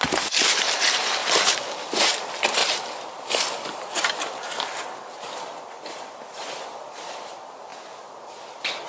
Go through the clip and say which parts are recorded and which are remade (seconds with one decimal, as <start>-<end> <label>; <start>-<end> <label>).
0.0-1.2 recorded; 1.2-2.2 remade; 2.2-2.6 recorded; 2.6-4.0 remade; 4.0-5.5 recorded; 5.5-7.3 remade; 7.3-8.9 recorded

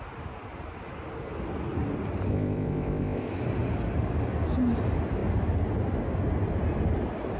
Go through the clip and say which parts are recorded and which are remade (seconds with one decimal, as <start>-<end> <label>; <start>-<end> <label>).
0.0-2.3 recorded; 2.3-3.3 remade; 3.3-7.4 recorded

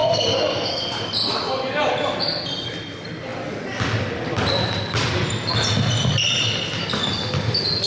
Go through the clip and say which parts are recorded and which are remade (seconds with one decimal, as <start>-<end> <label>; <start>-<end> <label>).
0.0-1.0 remade; 1.0-7.9 recorded

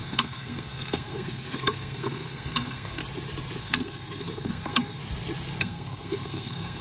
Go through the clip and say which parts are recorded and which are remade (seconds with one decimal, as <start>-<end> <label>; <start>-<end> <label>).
0.0-3.0 remade; 3.0-3.6 recorded; 3.6-5.0 remade; 5.0-5.6 recorded; 5.6-6.8 remade

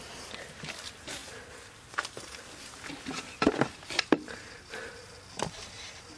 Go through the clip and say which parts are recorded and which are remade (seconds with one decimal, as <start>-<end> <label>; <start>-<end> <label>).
0.0-6.2 recorded

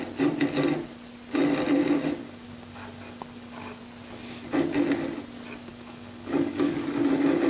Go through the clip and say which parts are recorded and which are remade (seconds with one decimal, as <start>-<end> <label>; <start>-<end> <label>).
0.0-2.2 recorded; 2.2-3.8 remade; 3.8-5.7 recorded; 5.7-7.0 remade; 7.0-7.5 recorded

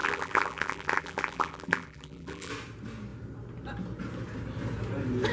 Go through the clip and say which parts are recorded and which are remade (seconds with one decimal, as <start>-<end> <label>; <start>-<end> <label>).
0.0-2.5 remade; 2.5-5.3 recorded

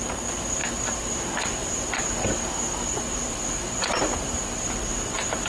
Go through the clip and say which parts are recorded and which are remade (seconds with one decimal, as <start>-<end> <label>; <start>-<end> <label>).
0.0-0.6 recorded; 0.6-1.2 remade; 1.2-1.6 recorded; 1.6-4.9 remade; 4.9-5.5 recorded